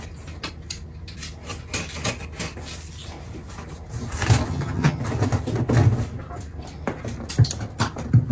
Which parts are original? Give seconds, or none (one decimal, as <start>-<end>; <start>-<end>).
0.0-4.5; 5.0-8.3